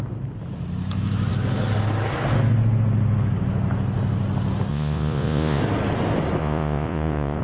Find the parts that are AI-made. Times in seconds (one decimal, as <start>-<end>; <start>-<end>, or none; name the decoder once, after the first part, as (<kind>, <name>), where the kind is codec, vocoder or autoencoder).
4.7-5.6 (vocoder, Vocos); 6.4-7.4